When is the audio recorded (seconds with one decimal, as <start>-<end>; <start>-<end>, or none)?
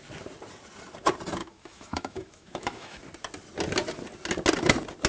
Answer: 0.0-1.4; 3.0-5.1